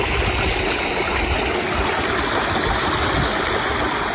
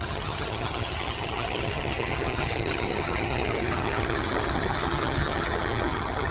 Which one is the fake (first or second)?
second